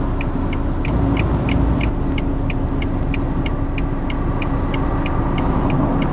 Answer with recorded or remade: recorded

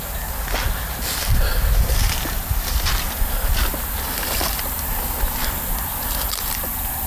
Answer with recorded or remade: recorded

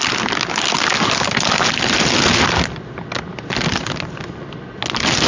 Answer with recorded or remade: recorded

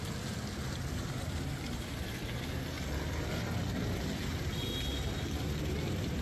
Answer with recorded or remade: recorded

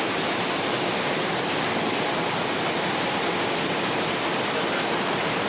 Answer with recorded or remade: recorded